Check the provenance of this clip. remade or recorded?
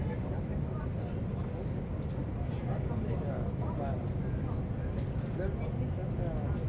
recorded